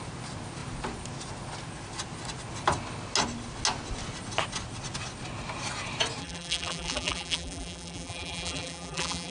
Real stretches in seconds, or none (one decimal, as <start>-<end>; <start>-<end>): 0.0-6.2